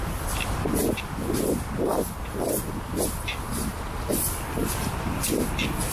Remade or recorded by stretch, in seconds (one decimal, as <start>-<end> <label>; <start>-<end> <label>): 0.0-5.9 recorded